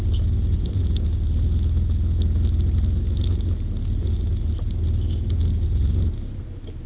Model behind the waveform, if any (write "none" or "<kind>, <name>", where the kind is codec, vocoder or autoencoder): none